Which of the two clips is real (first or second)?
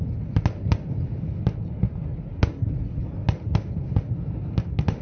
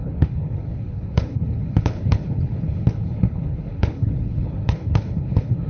first